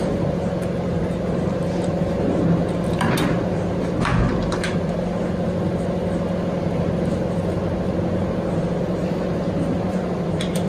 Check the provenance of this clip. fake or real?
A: real